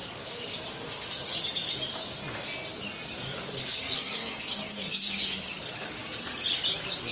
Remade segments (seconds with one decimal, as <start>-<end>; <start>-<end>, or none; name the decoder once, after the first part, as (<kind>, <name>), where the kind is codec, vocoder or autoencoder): 3.2-6.0 (codec, DAC)